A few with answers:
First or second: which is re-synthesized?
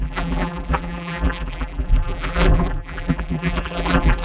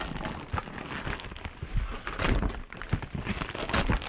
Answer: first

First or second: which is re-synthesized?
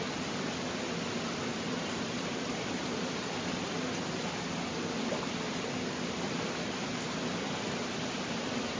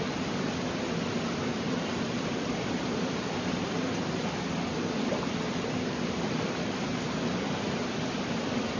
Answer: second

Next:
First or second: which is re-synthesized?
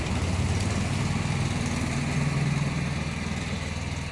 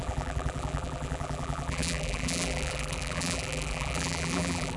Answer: second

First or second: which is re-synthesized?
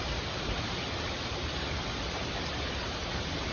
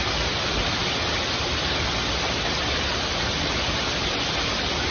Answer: first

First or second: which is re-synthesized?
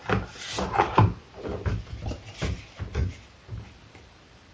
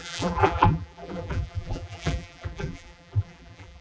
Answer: second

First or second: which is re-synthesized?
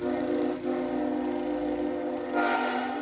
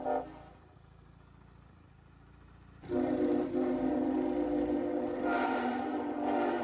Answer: second